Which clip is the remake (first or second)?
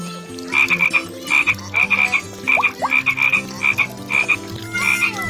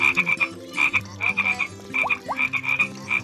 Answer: second